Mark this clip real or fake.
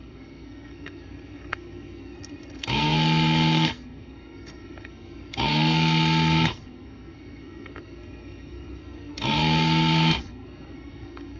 fake